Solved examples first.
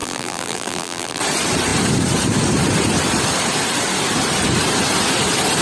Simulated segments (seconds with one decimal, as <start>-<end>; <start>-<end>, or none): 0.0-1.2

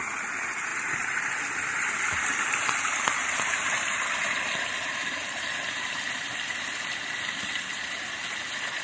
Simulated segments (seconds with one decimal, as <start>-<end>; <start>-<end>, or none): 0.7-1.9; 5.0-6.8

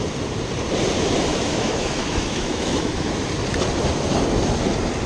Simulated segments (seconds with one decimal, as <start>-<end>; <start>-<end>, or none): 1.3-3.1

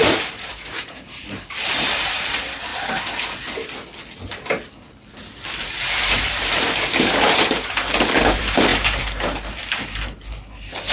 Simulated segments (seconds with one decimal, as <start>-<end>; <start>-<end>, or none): 0.0-2.7; 5.5-10.9

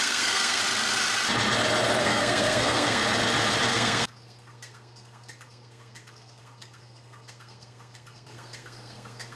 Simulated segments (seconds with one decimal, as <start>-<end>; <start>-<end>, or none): 0.0-0.6; 2.0-3.0; 3.7-9.4